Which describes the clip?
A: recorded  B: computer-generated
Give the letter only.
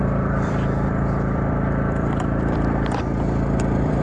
B